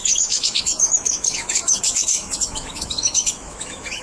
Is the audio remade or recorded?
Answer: remade